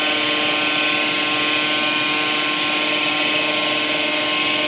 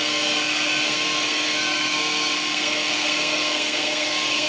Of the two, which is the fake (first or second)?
second